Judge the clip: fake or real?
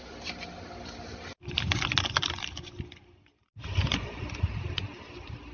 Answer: fake